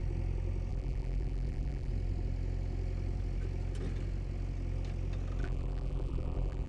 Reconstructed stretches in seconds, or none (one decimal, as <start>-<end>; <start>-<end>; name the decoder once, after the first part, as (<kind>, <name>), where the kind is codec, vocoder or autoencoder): 0.7-1.9 (vocoder, BigVGAN v2); 5.4-6.7